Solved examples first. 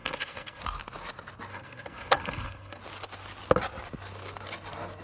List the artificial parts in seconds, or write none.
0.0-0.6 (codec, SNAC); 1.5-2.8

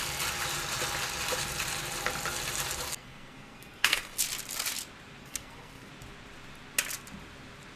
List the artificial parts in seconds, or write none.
2.9-4.2 (codec, SNAC); 5.2-5.9

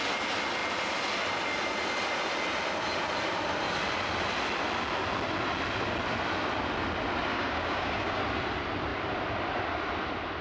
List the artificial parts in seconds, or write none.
7.3-8.2 (codec, DAC)

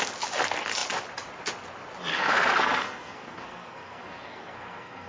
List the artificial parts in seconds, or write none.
2.1-5.1 (codec, SNAC)

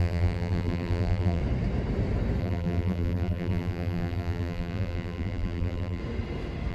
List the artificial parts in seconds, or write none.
0.0-1.4 (vocoder, BigVGAN v2); 2.4-6.0

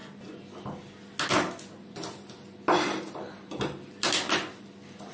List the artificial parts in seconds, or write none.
3.1-5.1 (vocoder, BigVGAN v2)